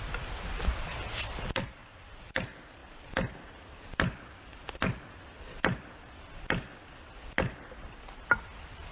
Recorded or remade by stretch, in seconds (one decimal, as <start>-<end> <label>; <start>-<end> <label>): 0.0-8.9 recorded